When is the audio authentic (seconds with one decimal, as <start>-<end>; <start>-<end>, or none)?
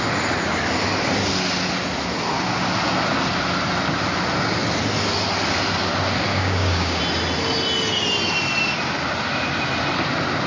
0.0-6.3; 7.0-10.5